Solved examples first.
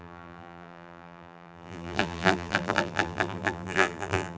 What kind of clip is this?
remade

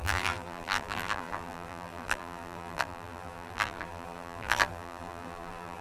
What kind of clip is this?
remade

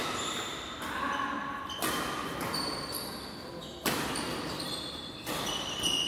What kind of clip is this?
recorded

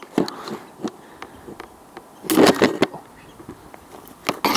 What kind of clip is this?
recorded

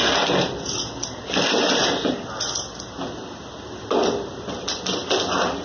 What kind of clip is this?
remade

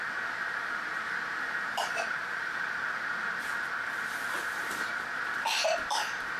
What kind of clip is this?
remade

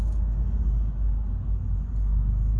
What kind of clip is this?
recorded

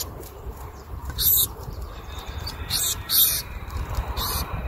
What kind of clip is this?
remade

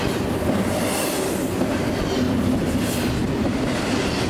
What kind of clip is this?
recorded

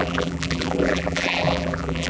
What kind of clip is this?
remade